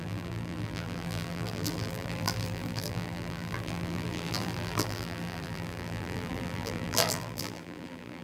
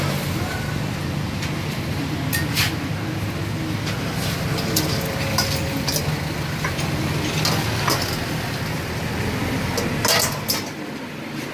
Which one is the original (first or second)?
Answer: second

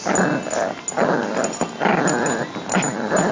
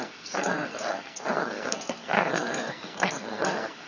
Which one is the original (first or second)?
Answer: first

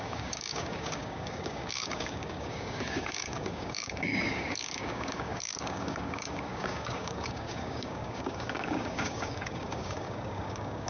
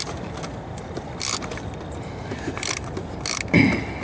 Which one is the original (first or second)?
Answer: second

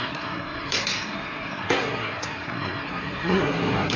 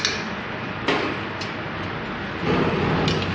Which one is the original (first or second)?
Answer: second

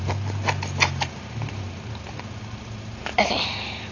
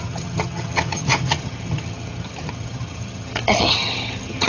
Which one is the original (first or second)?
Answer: first